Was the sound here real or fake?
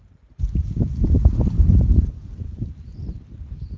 fake